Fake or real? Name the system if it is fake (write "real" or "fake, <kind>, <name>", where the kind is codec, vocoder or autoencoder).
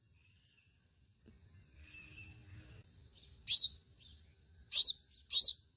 real